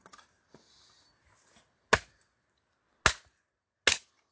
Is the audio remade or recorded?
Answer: recorded